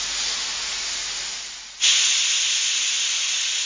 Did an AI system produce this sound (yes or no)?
no